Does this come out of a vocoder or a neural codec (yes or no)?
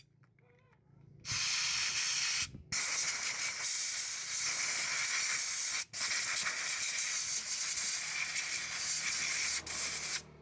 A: no